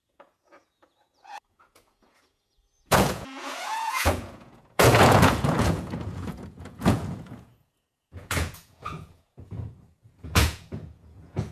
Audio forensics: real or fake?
fake